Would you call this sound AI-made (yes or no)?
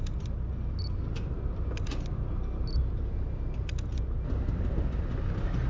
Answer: no